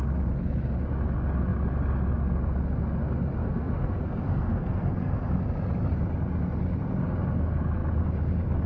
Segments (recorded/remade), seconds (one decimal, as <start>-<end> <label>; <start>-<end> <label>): 0.0-3.4 recorded; 3.4-5.3 remade; 5.3-8.7 recorded